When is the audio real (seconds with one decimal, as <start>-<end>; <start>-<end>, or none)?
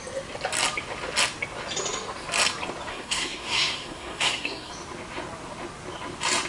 0.0-2.9; 4.7-6.5